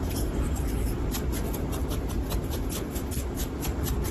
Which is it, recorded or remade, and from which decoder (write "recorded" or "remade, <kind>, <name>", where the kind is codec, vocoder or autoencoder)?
remade, vocoder, BigVGAN v2